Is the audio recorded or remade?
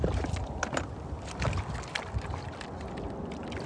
recorded